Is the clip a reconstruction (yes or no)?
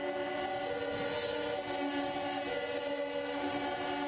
no